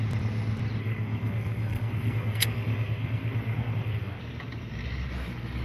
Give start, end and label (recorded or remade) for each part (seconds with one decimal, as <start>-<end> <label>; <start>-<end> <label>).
0.0-0.8 recorded; 0.8-4.2 remade; 4.2-5.6 recorded